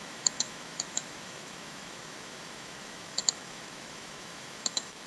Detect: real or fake fake